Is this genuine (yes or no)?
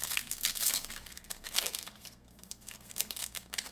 no